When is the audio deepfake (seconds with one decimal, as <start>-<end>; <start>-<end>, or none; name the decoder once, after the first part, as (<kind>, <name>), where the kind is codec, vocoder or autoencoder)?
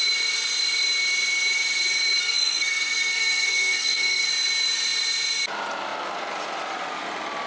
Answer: 2.2-4.3 (codec, SNAC)